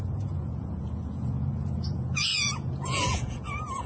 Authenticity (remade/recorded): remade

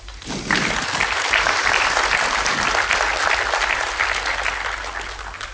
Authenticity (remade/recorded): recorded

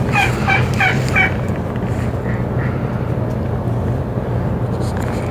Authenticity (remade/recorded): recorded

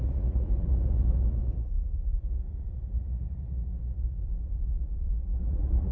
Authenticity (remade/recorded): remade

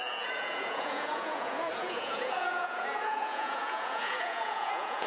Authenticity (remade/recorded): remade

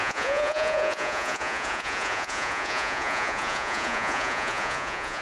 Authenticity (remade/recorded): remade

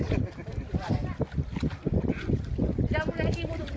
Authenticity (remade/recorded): recorded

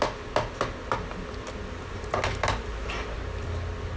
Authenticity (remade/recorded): recorded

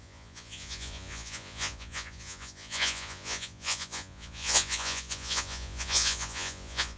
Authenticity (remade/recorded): remade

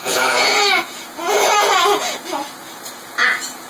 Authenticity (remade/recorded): remade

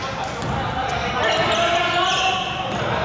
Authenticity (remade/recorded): recorded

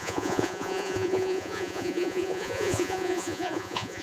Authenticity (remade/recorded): remade